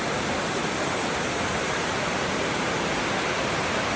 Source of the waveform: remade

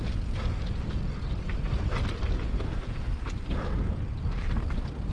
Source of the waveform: remade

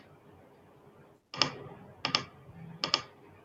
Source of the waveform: recorded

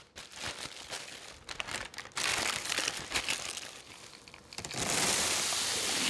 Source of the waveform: recorded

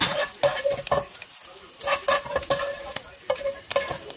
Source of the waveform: recorded